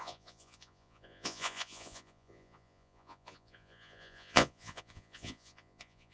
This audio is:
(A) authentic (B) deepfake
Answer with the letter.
B